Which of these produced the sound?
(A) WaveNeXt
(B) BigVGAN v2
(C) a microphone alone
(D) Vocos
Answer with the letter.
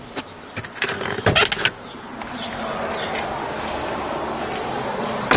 C